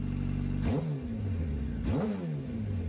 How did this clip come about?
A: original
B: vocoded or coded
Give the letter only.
A